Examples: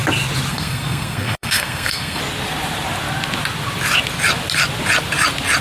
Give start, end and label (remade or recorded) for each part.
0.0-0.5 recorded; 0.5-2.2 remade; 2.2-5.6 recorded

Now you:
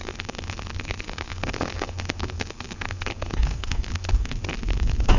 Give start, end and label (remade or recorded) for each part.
0.0-5.2 remade

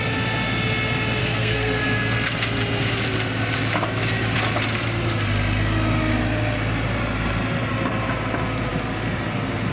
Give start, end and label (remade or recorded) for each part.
0.0-1.2 recorded; 1.2-1.8 remade; 1.8-9.7 recorded

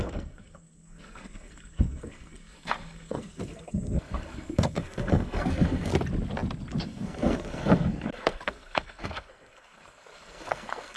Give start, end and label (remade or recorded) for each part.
0.0-5.9 remade; 5.9-6.8 recorded; 6.8-11.0 remade

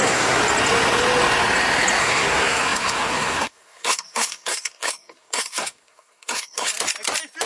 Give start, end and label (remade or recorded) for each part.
0.0-0.4 remade; 0.4-2.0 recorded; 2.0-6.7 remade; 6.7-7.5 recorded

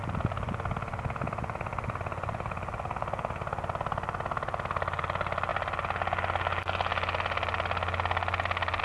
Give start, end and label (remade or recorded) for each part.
0.0-8.8 recorded

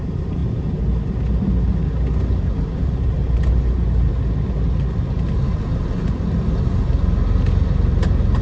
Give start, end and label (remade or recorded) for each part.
0.0-8.4 recorded